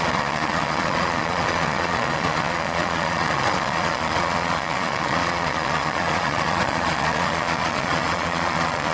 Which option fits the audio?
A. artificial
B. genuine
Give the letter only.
A